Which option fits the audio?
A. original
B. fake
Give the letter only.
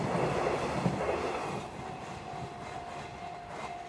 A